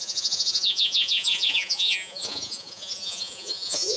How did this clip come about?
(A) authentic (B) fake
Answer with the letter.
B